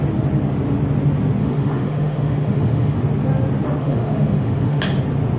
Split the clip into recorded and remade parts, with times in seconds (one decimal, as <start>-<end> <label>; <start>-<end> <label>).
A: 0.0-1.4 recorded; 1.4-3.0 remade; 3.0-3.8 recorded; 3.8-4.8 remade; 4.8-5.4 recorded